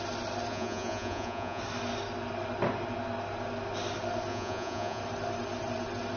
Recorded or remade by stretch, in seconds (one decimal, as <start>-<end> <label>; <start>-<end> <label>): 0.0-0.5 recorded; 0.5-1.6 remade; 1.6-4.3 recorded; 4.3-5.0 remade; 5.0-6.2 recorded